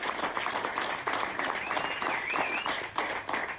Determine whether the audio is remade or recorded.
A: recorded